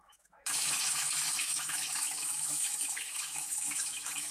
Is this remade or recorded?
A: remade